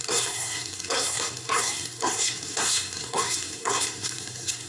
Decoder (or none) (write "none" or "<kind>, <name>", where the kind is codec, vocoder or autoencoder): codec, SNAC